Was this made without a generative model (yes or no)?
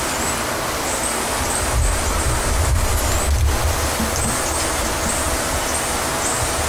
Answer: yes